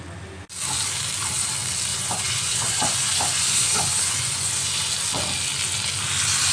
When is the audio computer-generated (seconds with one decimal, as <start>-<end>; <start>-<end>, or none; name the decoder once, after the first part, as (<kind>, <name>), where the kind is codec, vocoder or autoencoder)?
1.9-4.9 (vocoder, Vocos)